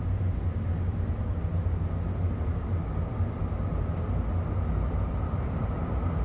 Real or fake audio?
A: real